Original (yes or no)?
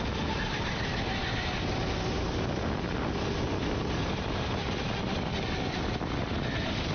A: yes